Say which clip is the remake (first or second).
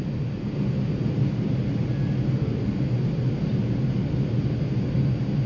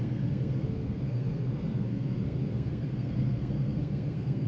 second